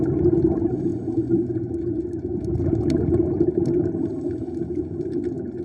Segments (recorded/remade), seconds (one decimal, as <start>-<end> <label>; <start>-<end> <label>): 0.0-5.6 recorded